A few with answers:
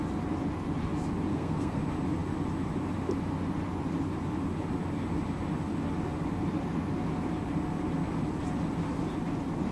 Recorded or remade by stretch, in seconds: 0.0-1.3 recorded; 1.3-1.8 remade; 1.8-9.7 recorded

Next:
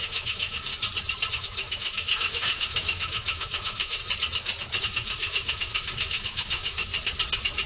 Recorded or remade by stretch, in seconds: 0.0-0.7 remade; 0.7-1.3 recorded; 1.3-4.0 remade; 4.0-4.8 recorded; 4.8-6.9 remade; 6.9-7.7 recorded